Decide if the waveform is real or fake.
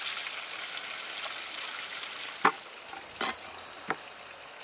real